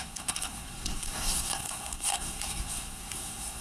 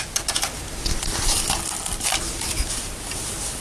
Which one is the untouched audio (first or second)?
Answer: second